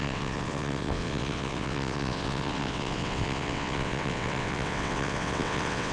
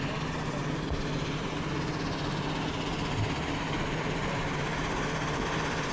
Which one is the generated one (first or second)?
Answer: first